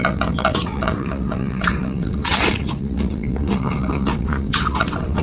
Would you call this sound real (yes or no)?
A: no